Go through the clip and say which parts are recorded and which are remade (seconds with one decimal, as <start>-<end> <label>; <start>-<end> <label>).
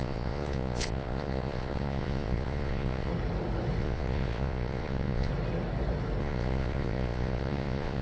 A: 0.0-3.1 remade; 3.1-3.8 recorded; 3.8-5.3 remade; 5.3-6.2 recorded; 6.2-8.0 remade